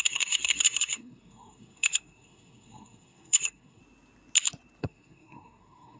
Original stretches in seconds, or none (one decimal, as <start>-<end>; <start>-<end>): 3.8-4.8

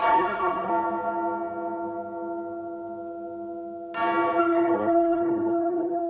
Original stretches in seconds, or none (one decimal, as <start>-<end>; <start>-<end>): 0.7-4.4

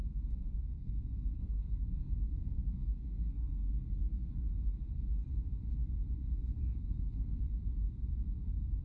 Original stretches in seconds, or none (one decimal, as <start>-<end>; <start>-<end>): 4.3-6.2; 7.4-8.8

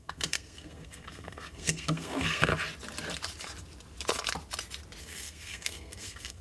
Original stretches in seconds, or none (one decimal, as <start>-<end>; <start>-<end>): 2.5-5.0

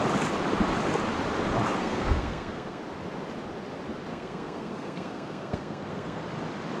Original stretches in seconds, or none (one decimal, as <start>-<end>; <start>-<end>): 0.0-1.8; 2.8-4.1; 6.2-6.8

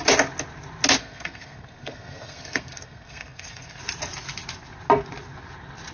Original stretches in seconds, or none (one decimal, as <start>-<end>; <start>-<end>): 0.0-1.0; 3.8-5.9

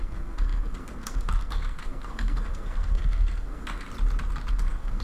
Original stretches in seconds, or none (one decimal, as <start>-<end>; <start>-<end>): 3.9-4.5